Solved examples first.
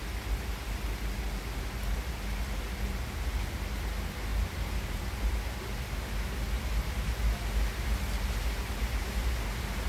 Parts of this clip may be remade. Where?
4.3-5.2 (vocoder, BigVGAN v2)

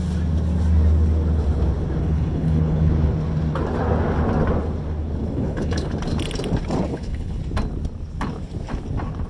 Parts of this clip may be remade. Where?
2.0-2.9 (codec, HILCodec); 5.2-5.9; 6.9-7.4

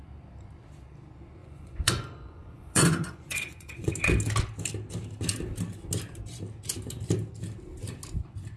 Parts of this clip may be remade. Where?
1.4-3.9 (vocoder, Vocos)

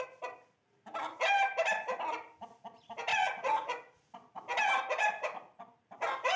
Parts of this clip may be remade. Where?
3.1-4.0 (vocoder, Vocos)

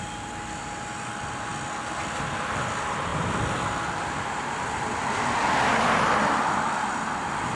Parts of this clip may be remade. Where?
0.0-1.5 (vocoder, BigVGAN v2); 2.6-7.6

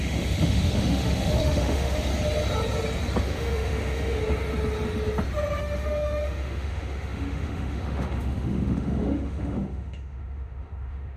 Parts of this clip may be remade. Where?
0.0-2.1 (autoencoder, DAC-VAE); 3.2-4.2; 5.6-11.2

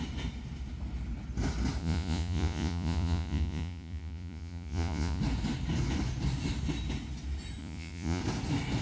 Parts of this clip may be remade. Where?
1.8-5.2 (vocoder, Vocos); 7.6-8.2